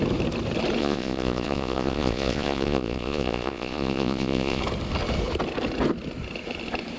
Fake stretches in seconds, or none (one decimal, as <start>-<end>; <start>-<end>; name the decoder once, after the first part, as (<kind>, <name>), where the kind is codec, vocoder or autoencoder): 0.8-4.6 (vocoder, Vocos)